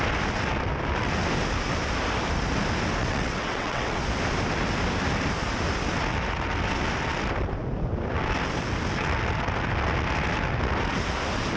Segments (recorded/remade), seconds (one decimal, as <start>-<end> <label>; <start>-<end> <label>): 0.0-3.0 recorded; 3.0-4.0 remade; 4.0-11.6 recorded